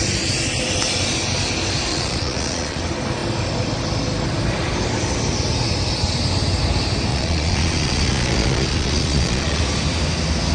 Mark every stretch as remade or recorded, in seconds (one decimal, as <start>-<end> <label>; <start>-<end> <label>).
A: 0.0-1.9 recorded; 1.9-2.8 remade; 2.8-7.1 recorded; 7.1-9.6 remade; 9.6-10.5 recorded